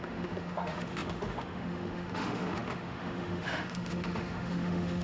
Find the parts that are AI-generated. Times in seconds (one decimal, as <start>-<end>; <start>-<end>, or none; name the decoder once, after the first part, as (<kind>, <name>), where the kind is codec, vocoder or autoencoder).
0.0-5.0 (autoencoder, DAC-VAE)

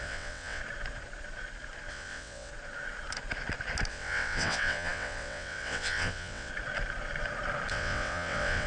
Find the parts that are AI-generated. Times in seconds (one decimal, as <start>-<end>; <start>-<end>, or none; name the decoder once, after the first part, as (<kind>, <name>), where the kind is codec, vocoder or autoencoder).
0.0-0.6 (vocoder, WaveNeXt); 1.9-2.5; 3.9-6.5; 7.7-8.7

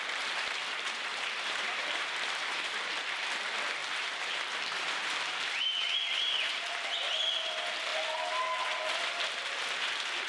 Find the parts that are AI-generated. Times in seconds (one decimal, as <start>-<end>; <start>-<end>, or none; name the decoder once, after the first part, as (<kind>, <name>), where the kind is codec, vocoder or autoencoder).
1.1-2.9 (vocoder, BigVGAN v2); 3.8-6.8

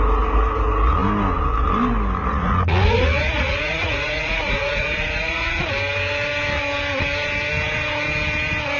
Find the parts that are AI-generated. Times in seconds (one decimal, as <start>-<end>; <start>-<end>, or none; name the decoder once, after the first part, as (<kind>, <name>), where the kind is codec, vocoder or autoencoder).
2.2-5.6 (vocoder, Vocos)